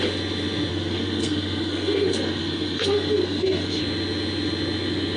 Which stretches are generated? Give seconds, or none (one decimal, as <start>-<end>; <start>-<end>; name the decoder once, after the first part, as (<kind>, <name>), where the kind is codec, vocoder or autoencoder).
0.7-3.8 (codec, SNAC)